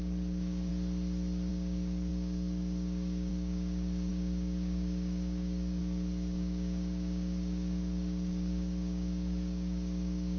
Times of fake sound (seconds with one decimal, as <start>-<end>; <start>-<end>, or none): 0.0-0.7; 1.5-10.4